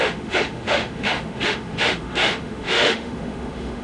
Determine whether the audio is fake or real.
fake